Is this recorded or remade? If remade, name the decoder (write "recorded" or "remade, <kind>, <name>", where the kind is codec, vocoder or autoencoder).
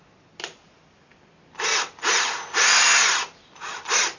recorded